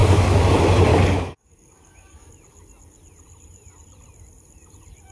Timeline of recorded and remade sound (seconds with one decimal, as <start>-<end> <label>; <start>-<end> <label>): 0.0-0.5 remade; 0.5-0.9 recorded; 0.9-2.3 remade; 2.3-5.1 recorded